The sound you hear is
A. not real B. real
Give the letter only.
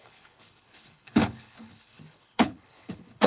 A